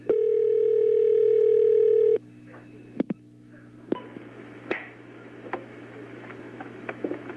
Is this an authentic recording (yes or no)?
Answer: no